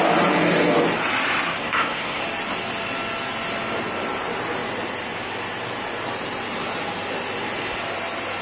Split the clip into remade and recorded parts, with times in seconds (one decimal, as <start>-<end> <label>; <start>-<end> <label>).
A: 0.0-1.6 recorded; 1.6-2.2 remade; 2.2-8.4 recorded